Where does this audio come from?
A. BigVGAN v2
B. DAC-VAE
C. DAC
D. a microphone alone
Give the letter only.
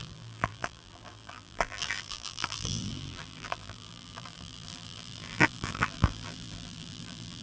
A